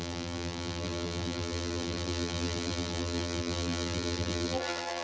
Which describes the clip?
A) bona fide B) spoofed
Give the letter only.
B